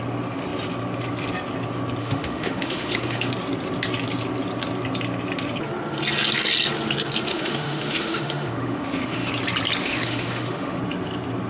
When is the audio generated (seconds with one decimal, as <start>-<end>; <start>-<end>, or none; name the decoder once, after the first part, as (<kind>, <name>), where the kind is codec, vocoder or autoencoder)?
2.0-3.3 (autoencoder, DAC-VAE); 7.3-9.3; 9.8-10.8